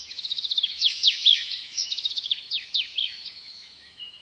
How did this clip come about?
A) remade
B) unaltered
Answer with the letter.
A